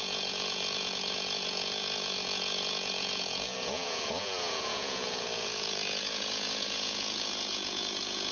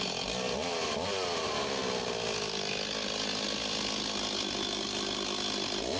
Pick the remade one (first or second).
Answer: first